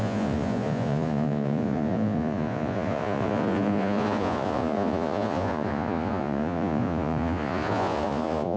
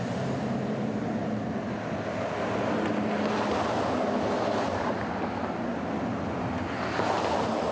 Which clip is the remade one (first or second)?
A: first